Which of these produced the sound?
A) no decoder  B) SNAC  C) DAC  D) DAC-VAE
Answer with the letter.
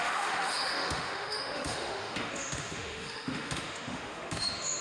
D